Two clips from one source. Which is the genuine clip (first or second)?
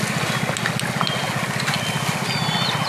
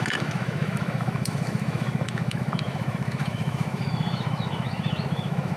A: first